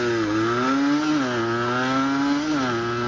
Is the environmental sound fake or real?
real